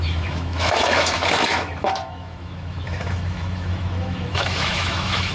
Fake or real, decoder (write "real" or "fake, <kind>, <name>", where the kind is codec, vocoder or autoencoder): fake, autoencoder, DAC-VAE